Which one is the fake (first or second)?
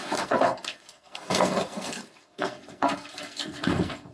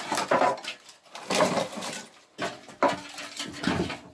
first